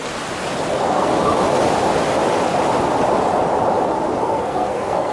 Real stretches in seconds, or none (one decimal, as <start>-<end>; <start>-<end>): 0.0-0.7; 1.1-4.2